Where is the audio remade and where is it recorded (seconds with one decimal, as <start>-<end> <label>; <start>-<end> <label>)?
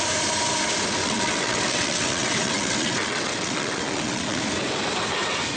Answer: 0.0-1.0 recorded; 1.0-4.4 remade; 4.4-5.6 recorded